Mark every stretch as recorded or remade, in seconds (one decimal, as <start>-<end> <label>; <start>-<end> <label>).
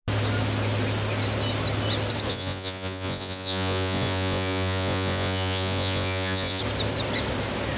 0.0-2.3 recorded; 2.3-6.6 remade; 6.6-7.8 recorded